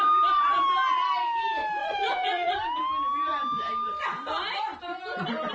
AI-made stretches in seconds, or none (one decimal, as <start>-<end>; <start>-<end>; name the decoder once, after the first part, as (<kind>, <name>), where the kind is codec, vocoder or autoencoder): 1.8-2.5 (vocoder, Vocos)